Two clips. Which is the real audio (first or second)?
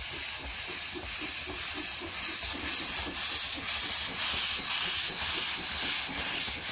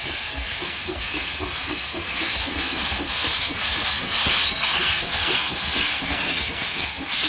first